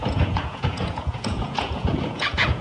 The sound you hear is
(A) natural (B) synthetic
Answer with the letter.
B